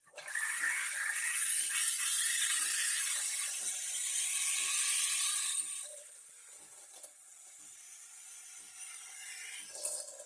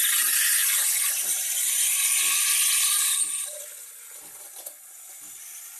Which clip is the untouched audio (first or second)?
second